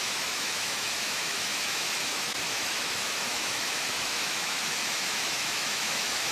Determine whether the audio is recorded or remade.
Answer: remade